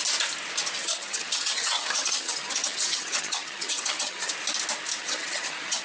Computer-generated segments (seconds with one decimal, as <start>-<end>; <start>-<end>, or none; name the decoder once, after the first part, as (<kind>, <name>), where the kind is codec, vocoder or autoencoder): 0.8-4.3 (vocoder, HiFi-GAN); 5.0-5.8